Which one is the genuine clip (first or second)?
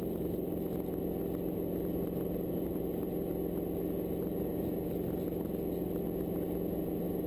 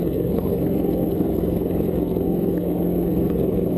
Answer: first